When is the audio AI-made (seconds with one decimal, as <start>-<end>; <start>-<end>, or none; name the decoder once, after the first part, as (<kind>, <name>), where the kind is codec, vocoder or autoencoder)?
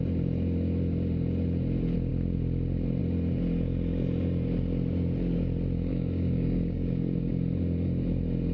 5.9-7.3 (codec, DAC)